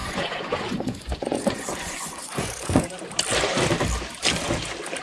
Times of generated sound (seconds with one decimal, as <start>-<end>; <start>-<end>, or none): 0.0-3.0